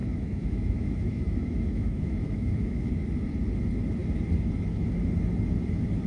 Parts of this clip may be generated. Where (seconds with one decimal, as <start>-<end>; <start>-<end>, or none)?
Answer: 0.0-2.9